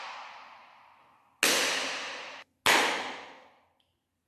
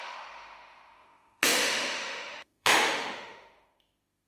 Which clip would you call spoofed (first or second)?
second